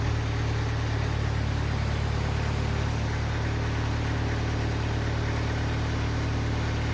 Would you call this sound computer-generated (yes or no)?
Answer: no